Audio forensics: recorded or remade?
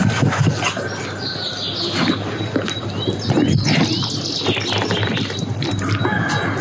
recorded